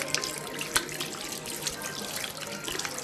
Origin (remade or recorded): recorded